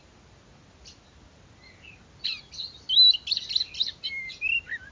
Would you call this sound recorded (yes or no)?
yes